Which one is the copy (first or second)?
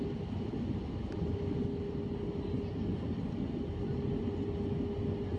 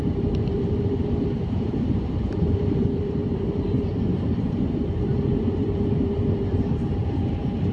second